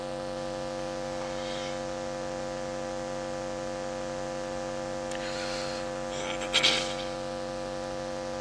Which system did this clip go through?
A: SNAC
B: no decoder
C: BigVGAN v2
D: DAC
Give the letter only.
B